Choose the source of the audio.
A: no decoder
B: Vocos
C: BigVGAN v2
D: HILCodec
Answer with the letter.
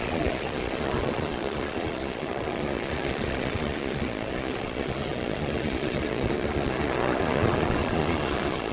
B